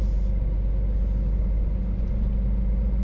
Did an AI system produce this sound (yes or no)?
no